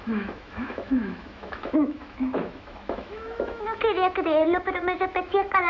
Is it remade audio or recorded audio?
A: remade